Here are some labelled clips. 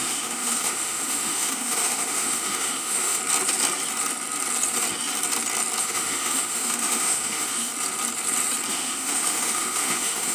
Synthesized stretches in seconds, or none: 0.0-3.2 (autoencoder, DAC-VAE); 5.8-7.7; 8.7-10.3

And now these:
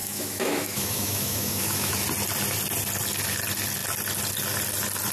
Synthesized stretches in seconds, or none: 0.0-1.9 (autoencoder, DAC-VAE)

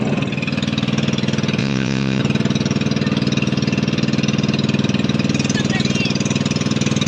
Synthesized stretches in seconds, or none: 1.6-2.2 (vocoder, WaveNeXt)

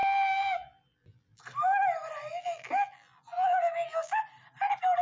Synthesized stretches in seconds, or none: 0.0-1.4 (vocoder, BigVGAN v2); 2.3-4.2

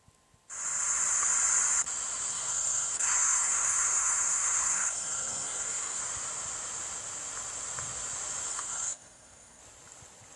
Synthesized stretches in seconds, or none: 2.3-6.0 (codec, SNAC); 8.5-9.6

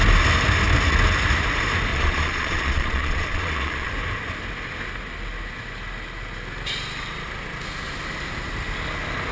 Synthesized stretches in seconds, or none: 1.9-3.9 (vocoder, Vocos)

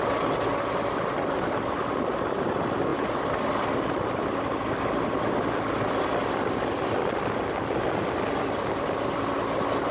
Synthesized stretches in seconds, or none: none

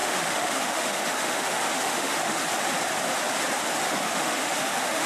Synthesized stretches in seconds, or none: 0.0-2.4 (autoencoder, DAC-VAE); 3.8-5.1